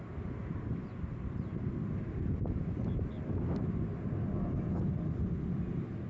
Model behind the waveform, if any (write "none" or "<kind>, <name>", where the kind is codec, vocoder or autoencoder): none